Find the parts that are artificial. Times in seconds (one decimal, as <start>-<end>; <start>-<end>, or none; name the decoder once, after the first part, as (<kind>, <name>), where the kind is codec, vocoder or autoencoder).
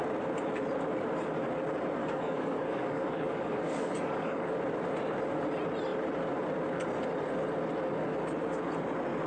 2.0-4.5 (codec, DAC)